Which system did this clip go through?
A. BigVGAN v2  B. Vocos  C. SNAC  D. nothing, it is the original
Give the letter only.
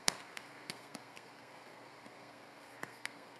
C